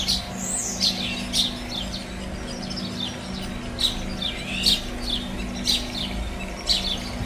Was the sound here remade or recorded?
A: recorded